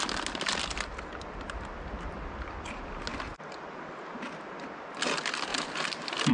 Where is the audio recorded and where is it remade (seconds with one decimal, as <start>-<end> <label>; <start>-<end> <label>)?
0.0-6.3 recorded